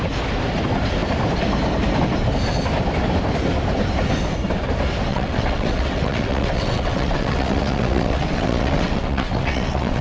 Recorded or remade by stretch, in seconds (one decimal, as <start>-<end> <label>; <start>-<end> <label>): 0.0-5.1 recorded; 5.1-10.0 remade

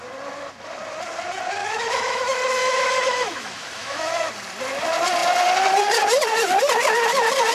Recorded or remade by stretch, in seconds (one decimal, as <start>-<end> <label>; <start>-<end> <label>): 0.0-1.6 recorded; 1.6-2.2 remade; 2.2-2.6 recorded; 2.6-4.3 remade; 4.3-7.5 recorded

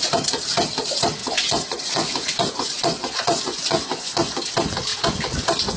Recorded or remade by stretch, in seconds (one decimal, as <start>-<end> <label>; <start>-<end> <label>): 0.0-1.2 recorded; 1.2-4.5 remade; 4.5-5.8 recorded

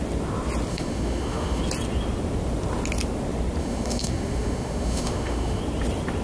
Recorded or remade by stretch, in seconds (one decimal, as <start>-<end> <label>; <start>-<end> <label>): 0.0-0.7 recorded; 0.7-1.6 remade; 1.6-3.6 recorded; 3.6-5.6 remade; 5.6-6.2 recorded